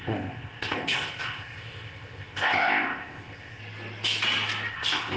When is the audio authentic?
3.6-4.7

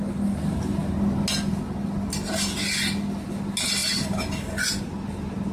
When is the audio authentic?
0.0-5.5

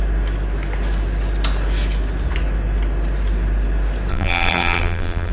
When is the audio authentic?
0.0-4.1